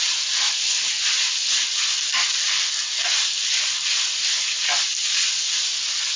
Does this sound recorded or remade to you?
recorded